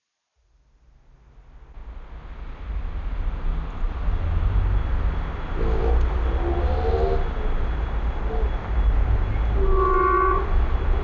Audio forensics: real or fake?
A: real